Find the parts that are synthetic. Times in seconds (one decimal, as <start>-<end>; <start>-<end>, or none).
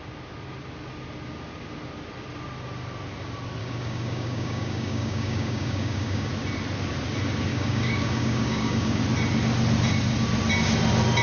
3.6-6.3; 7.5-9.0